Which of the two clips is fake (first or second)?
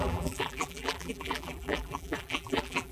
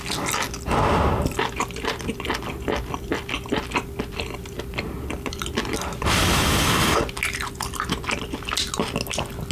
first